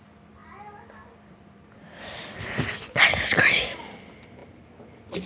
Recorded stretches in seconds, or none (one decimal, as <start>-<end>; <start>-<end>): 0.0-5.3